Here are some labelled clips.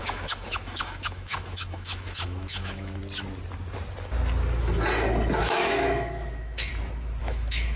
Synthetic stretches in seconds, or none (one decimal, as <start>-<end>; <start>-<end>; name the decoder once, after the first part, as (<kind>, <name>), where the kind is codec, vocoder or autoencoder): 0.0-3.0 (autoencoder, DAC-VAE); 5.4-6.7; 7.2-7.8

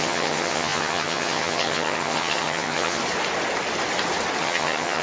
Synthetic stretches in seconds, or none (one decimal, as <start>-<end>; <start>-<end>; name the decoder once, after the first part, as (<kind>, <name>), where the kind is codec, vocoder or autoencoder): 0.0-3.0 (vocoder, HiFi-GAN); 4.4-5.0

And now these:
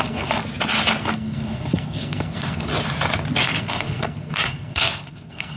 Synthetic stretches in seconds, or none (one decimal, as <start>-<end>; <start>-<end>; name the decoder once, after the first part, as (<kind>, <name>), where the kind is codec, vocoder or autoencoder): 0.0-0.4 (codec, SNAC); 1.0-2.7; 3.4-5.6